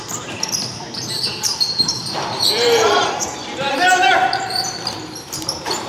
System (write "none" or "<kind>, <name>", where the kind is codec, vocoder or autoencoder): vocoder, BigVGAN v2